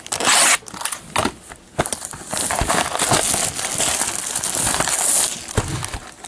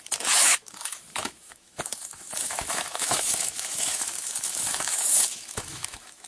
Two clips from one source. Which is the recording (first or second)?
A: first